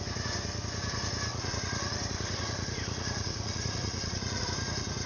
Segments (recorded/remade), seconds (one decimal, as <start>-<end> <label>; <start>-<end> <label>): 0.0-1.3 recorded; 1.3-4.4 remade; 4.4-5.1 recorded